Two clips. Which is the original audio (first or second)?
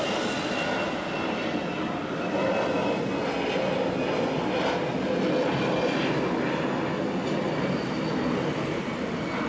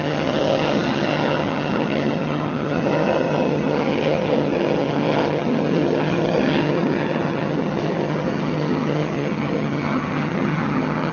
first